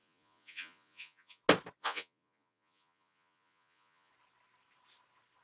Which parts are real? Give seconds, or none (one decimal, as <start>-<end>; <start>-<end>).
1.4-1.8; 4.1-5.4